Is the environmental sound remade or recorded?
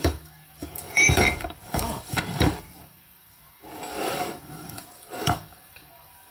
remade